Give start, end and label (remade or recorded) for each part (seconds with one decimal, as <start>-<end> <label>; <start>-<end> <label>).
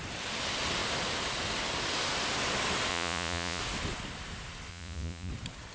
0.0-2.9 recorded; 2.9-3.6 remade; 3.6-4.7 recorded; 4.7-5.3 remade; 5.3-5.7 recorded